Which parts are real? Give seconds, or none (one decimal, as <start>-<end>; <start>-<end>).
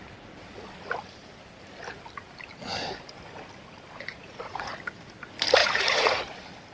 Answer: 0.0-4.1; 4.7-5.6; 6.2-6.7